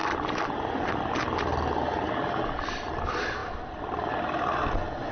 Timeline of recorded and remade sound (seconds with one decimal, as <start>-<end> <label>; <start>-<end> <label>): 0.0-1.1 remade; 1.1-5.1 recorded